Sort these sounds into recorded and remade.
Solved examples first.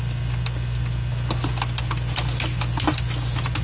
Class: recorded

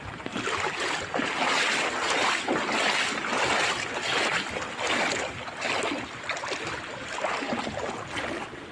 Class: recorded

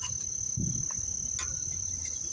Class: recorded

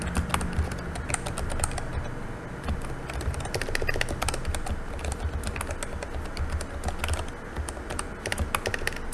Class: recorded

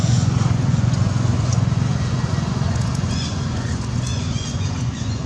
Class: remade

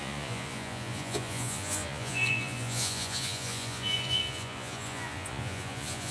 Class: remade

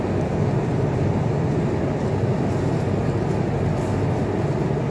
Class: recorded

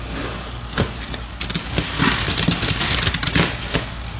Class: recorded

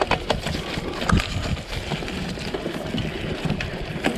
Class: recorded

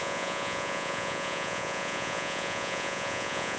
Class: remade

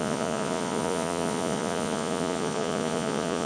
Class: remade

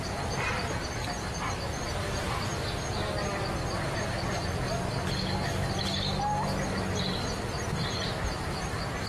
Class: recorded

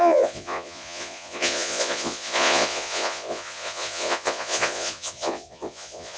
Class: remade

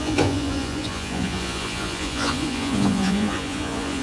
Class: remade